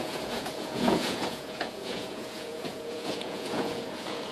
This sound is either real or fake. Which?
fake